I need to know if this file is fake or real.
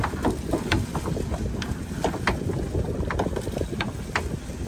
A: real